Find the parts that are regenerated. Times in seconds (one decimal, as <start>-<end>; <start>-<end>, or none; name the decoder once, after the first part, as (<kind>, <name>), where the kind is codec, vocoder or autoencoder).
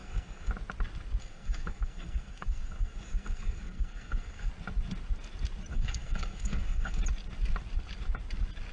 0.0-0.5 (codec, SNAC); 1.2-4.5; 5.7-7.0